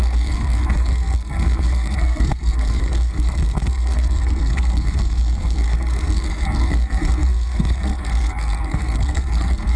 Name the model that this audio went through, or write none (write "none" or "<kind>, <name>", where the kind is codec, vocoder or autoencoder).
codec, SNAC